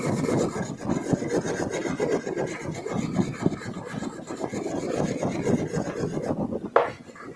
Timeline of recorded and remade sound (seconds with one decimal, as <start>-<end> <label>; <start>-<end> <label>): 0.0-7.4 recorded